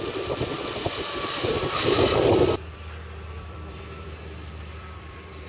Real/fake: fake